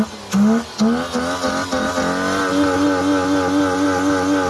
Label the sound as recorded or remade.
recorded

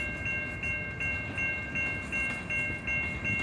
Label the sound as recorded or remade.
recorded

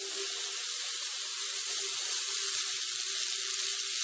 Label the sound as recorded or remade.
recorded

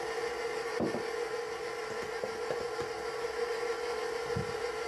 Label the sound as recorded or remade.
recorded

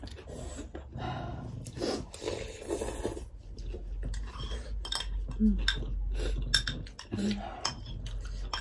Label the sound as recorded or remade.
recorded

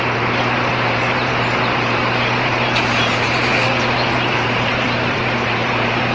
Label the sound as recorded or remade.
remade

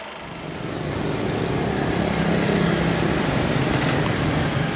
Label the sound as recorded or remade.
recorded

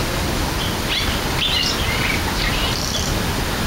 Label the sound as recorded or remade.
recorded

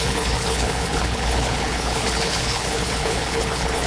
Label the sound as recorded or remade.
remade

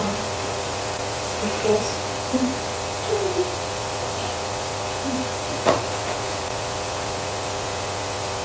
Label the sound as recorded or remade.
remade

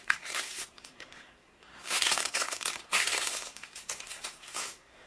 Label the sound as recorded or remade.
remade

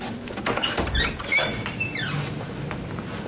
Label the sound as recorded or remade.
recorded